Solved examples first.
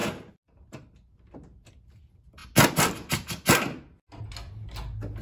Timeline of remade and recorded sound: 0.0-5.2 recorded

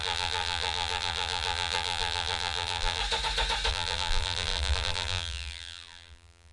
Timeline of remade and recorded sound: 0.0-3.0 remade; 3.0-3.7 recorded; 3.7-6.5 remade

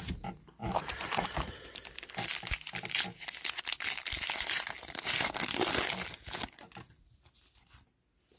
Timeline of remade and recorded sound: 0.0-0.6 recorded; 0.6-1.8 remade; 1.8-8.4 recorded

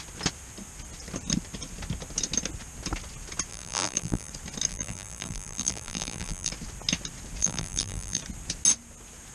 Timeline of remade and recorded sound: 0.0-3.5 recorded; 3.5-4.3 remade; 4.3-4.7 recorded; 4.7-6.5 remade; 6.5-7.4 recorded; 7.4-8.2 remade; 8.2-9.3 recorded

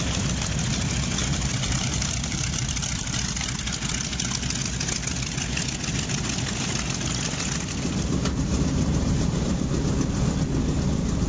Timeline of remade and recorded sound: 0.0-1.2 recorded; 1.2-3.2 remade; 3.2-8.5 recorded; 8.5-9.7 remade; 9.7-11.3 recorded

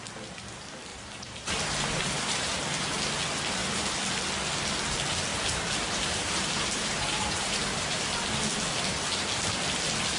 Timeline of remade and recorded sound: 0.0-0.9 recorded; 0.9-2.6 remade; 2.6-5.3 recorded; 5.3-8.0 remade; 8.0-10.2 recorded

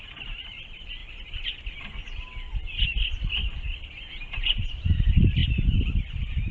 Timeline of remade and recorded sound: 0.0-1.0 remade; 1.0-4.4 recorded; 4.4-5.4 remade; 5.4-6.1 recorded; 6.1-6.5 remade